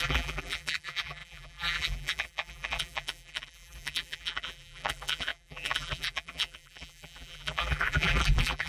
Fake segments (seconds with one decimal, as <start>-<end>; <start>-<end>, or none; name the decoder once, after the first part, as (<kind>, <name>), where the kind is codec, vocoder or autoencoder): 0.0-8.7 (vocoder, BigVGAN v2)